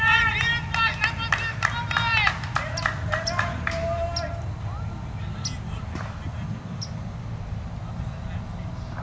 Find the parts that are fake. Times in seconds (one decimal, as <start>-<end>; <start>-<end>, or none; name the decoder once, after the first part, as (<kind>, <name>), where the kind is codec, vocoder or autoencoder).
none